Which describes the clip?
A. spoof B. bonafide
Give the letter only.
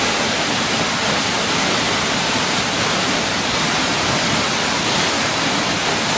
B